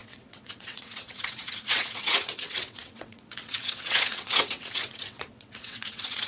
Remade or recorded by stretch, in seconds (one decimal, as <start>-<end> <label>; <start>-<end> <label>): 0.0-6.3 remade